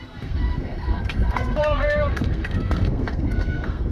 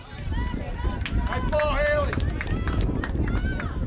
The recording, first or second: second